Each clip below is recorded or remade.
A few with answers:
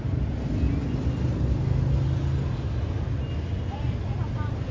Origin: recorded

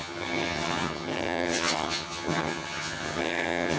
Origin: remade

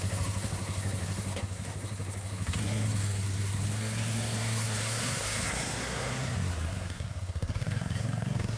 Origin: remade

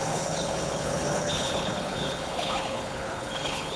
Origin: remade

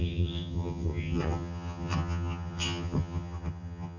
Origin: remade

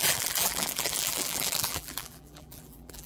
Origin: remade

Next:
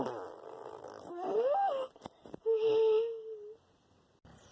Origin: recorded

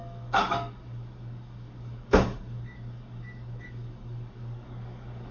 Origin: remade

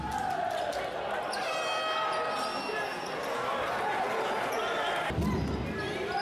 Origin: recorded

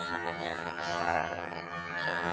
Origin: remade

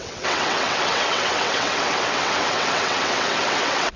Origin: remade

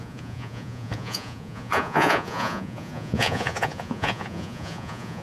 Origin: remade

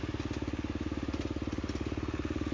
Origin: recorded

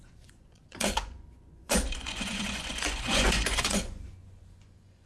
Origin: remade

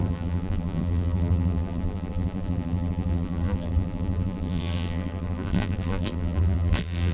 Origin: remade